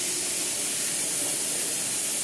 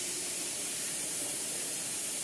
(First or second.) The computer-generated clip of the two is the second